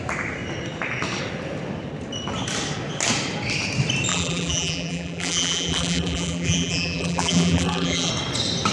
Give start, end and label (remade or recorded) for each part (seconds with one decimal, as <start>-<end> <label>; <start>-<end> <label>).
0.0-4.1 recorded; 4.1-8.1 remade; 8.1-8.7 recorded